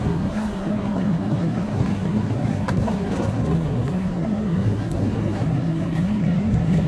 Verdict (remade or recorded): remade